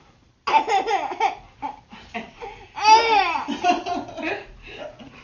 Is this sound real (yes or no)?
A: yes